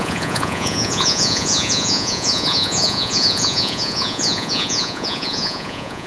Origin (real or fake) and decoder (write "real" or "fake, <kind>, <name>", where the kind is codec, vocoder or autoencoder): fake, vocoder, Vocos